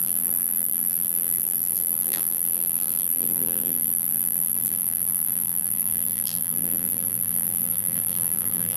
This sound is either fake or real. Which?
fake